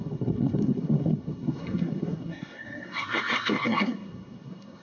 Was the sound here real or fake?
fake